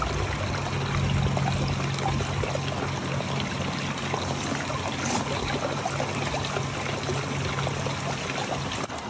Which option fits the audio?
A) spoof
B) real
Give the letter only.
B